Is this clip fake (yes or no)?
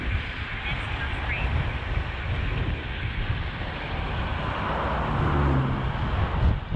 no